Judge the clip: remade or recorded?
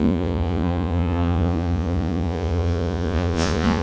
remade